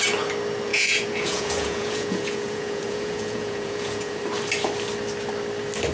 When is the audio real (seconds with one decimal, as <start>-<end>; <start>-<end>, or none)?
0.0-0.7; 4.2-5.9

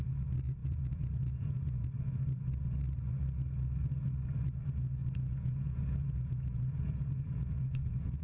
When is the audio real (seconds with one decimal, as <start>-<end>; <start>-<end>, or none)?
0.0-0.6; 1.9-5.0

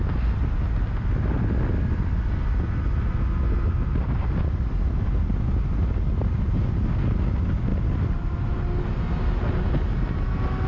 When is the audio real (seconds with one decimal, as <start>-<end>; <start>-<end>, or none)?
0.0-10.7

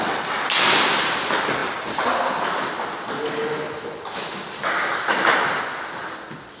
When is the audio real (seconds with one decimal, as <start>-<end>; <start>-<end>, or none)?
0.0-6.6